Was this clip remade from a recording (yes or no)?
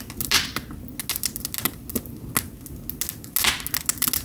no